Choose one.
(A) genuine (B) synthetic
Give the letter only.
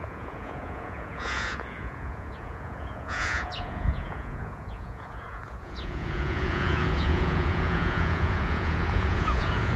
B